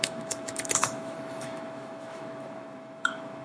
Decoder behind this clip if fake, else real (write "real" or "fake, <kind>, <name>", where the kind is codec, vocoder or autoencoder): fake, autoencoder, DAC-VAE